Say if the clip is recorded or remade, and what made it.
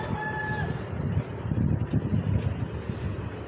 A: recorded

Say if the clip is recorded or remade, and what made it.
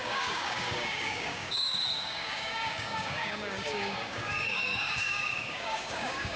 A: remade, codec, DAC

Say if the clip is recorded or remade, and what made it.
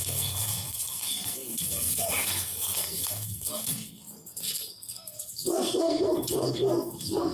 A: remade, codec, SNAC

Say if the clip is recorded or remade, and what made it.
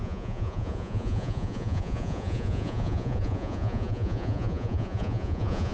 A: remade, vocoder, Vocos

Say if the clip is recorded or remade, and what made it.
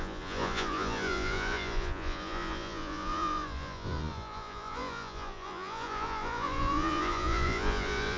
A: remade, vocoder, Vocos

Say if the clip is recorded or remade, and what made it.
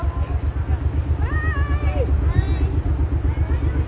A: recorded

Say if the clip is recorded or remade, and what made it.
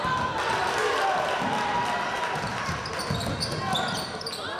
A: recorded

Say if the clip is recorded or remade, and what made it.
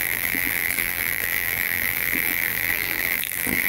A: remade, vocoder, BigVGAN v2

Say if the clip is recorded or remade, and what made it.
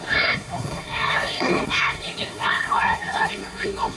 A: remade, codec, SNAC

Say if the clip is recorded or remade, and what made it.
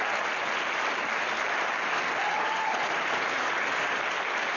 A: recorded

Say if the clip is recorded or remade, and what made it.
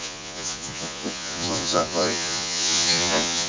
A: remade, vocoder, Vocos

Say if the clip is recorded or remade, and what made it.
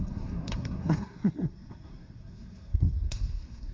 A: remade, codec, SNAC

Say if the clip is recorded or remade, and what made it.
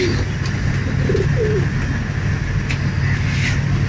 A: recorded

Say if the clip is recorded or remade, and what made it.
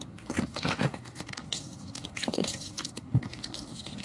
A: remade, codec, SNAC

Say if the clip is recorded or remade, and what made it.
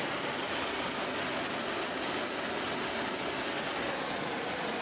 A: recorded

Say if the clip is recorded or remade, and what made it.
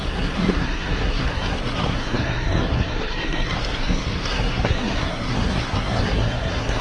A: remade, codec, SNAC